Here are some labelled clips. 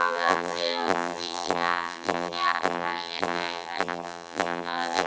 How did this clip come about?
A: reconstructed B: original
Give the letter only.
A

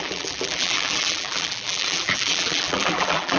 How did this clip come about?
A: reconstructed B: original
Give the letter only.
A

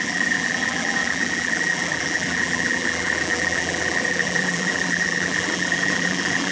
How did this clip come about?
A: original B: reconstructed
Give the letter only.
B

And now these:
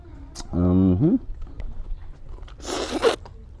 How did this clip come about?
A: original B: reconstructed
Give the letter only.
A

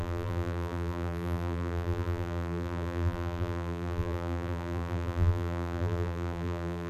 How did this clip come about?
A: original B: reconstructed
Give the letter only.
B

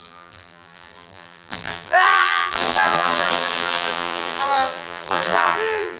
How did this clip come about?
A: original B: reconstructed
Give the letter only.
B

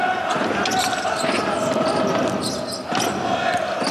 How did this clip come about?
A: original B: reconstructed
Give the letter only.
A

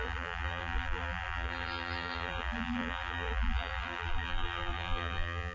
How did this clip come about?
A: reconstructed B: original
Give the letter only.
A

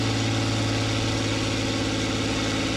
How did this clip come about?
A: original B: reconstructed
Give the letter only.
A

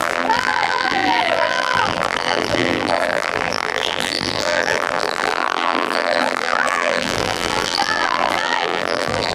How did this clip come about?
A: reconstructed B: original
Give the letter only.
A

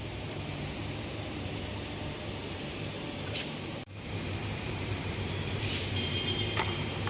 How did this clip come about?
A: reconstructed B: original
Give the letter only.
A